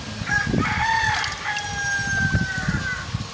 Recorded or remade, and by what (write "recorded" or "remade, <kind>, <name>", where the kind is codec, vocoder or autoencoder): recorded